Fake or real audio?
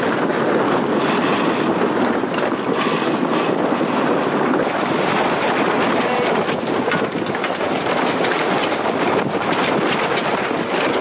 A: real